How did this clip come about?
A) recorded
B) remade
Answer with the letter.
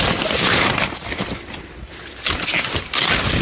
A